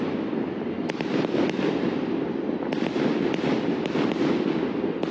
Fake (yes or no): no